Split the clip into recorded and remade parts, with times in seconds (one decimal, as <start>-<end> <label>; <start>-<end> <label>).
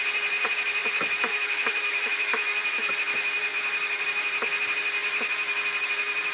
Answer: 0.0-1.3 recorded; 1.3-2.9 remade; 2.9-6.3 recorded